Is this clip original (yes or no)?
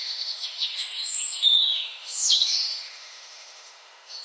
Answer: no